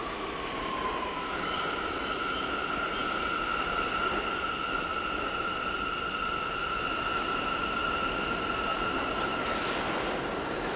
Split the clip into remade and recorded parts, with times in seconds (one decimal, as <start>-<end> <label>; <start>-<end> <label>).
0.0-8.7 recorded; 8.7-9.8 remade; 9.8-10.8 recorded